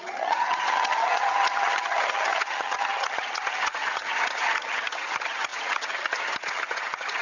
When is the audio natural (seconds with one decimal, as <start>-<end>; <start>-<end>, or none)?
none